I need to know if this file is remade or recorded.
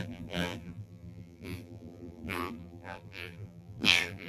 remade